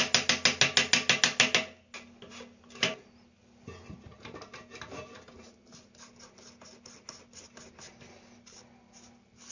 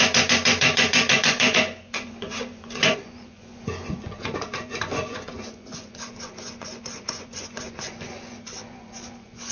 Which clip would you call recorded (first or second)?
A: first